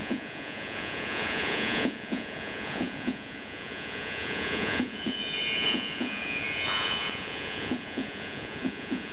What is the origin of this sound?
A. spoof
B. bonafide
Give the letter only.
A